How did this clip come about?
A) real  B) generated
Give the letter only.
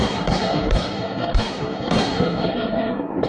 B